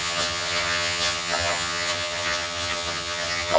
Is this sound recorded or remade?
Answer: remade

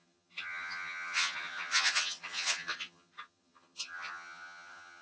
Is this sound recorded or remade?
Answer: remade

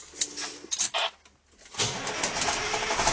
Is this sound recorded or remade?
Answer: recorded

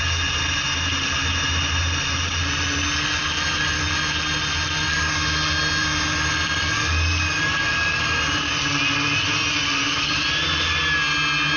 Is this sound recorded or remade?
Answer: recorded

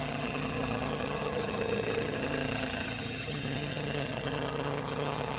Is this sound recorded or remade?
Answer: remade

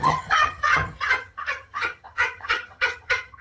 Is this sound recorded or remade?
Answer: remade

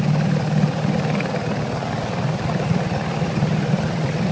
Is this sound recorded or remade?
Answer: recorded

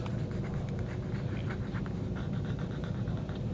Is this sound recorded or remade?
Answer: recorded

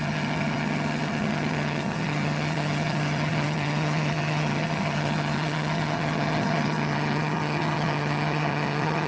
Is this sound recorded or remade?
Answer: remade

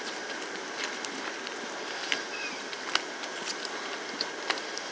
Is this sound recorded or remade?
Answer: recorded